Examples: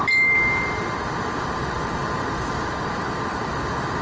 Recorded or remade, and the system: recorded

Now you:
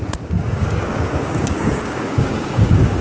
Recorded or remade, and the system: remade, codec, DAC